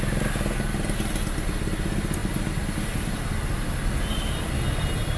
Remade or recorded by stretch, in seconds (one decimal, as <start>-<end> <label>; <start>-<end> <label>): 0.0-2.2 recorded; 2.2-2.7 remade; 2.7-5.2 recorded